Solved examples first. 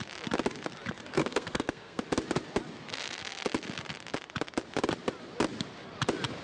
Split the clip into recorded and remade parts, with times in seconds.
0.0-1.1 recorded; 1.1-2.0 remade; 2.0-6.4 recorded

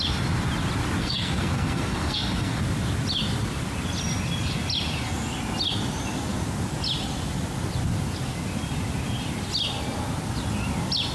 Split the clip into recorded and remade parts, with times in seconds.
0.0-1.0 recorded; 1.0-2.6 remade; 2.6-11.1 recorded